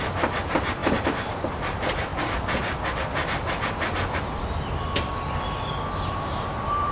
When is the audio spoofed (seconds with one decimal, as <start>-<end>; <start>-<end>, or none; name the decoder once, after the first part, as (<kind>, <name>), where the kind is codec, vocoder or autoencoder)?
0.0-2.1 (vocoder, BigVGAN v2); 6.1-6.9